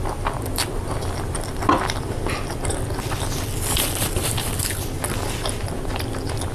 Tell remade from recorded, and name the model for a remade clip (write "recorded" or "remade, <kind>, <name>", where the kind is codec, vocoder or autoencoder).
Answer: recorded